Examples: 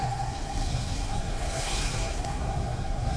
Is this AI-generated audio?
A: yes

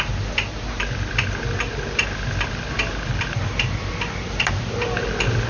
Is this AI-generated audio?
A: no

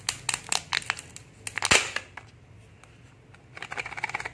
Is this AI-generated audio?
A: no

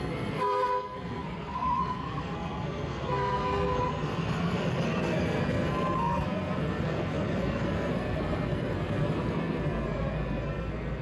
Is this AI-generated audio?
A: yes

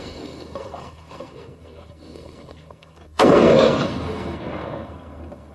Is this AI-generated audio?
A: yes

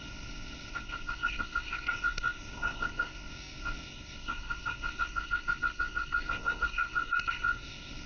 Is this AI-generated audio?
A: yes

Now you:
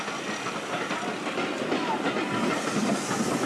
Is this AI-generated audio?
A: no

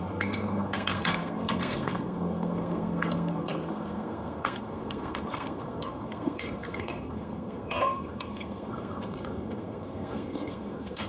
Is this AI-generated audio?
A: yes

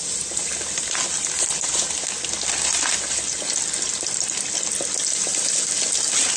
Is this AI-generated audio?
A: no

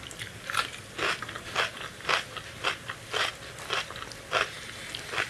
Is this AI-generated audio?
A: no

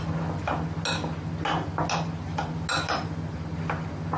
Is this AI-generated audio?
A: no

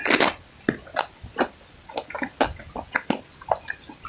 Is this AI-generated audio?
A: no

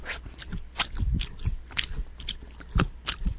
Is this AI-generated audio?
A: no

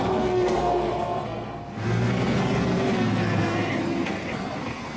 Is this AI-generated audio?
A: yes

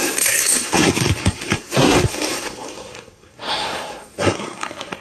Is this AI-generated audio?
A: yes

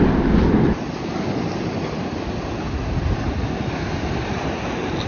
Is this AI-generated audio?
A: no